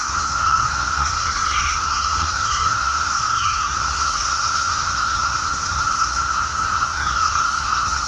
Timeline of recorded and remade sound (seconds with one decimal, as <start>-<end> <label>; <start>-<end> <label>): 0.0-8.1 remade